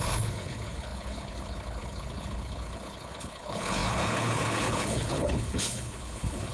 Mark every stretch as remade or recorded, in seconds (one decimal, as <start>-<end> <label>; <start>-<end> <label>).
0.0-6.5 remade